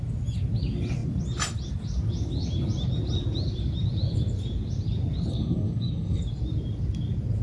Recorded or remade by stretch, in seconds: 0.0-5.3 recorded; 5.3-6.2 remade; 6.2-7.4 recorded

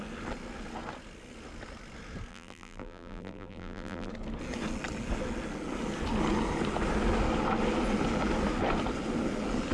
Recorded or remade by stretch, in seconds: 0.0-2.3 recorded; 2.3-4.1 remade; 4.1-9.7 recorded